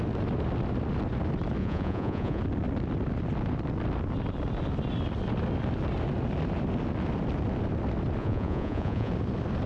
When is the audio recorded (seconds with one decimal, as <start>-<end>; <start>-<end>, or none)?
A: 0.0-1.6; 2.4-8.2; 9.1-9.7